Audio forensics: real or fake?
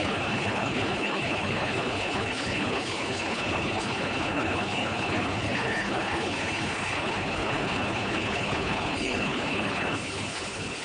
fake